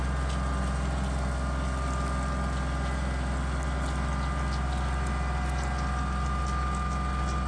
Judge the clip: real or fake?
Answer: real